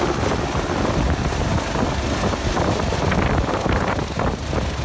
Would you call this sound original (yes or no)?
yes